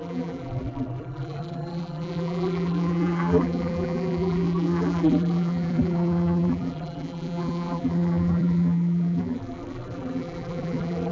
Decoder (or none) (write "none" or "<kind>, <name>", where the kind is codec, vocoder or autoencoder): vocoder, BigVGAN v2